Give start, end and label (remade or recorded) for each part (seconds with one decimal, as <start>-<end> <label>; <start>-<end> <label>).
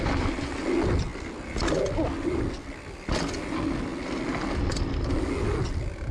0.0-6.1 recorded